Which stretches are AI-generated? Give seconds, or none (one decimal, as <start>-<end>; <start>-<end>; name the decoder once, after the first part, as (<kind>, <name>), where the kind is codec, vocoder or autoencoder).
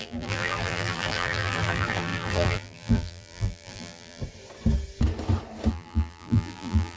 0.0-4.2 (vocoder, BigVGAN v2); 5.7-7.0